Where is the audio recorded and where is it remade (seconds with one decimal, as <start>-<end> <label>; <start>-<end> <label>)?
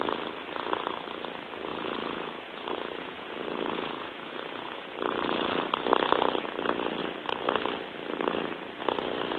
0.0-1.7 recorded; 1.7-5.7 remade; 5.7-9.4 recorded